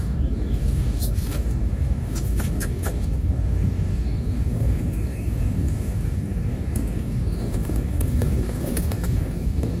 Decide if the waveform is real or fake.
fake